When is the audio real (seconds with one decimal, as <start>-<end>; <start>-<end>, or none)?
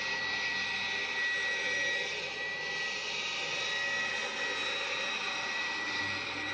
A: 0.0-3.0; 3.7-4.6; 6.0-6.5